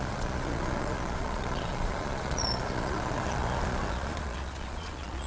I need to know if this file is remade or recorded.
remade